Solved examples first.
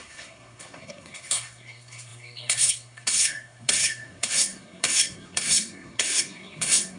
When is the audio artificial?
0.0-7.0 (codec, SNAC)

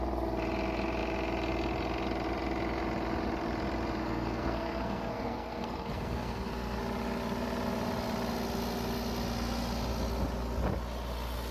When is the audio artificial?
4.0-6.8 (codec, SNAC)

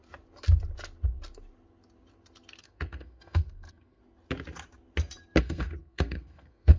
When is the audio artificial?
2.6-4.0 (codec, SNAC); 5.4-6.8

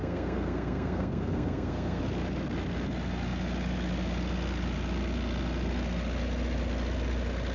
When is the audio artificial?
0.0-2.0 (codec, SNAC)

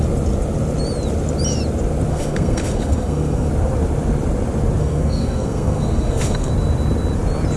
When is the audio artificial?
2.1-3.5 (codec, SNAC); 4.8-6.5

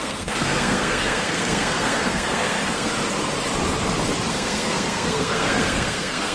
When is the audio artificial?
0.0-2.9 (codec, SNAC); 4.3-6.3

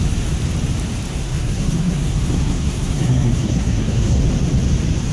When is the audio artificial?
1.1-4.2 (codec, SNAC)